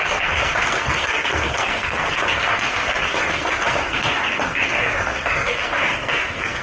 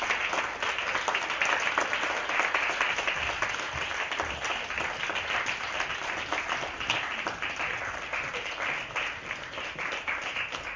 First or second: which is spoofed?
first